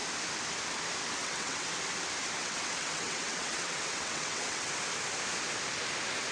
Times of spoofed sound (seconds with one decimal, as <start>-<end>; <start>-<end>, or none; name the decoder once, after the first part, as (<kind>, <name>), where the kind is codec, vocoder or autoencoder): 1.2-1.7 (vocoder, WaveNeXt); 2.4-4.7